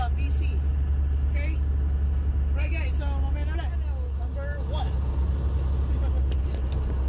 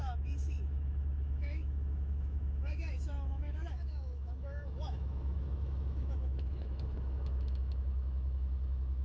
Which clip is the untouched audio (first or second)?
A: first